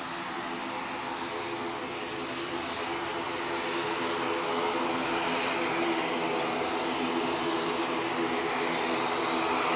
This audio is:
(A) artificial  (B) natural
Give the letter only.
B